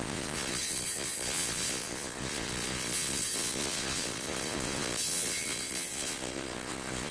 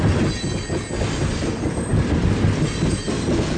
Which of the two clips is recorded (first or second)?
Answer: second